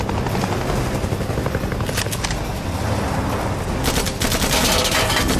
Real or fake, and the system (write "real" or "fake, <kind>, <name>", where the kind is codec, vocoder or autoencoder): real